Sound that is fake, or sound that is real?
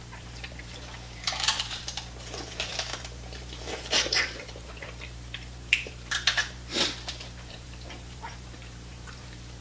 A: fake